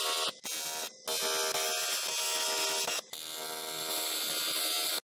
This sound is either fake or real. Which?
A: real